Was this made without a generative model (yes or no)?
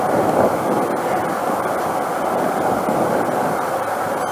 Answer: yes